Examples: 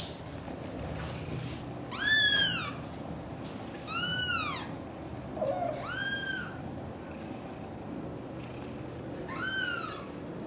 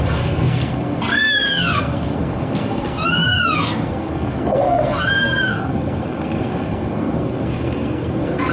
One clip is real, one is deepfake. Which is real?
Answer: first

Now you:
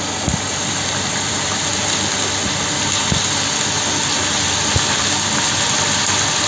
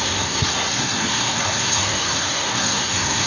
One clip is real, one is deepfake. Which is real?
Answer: first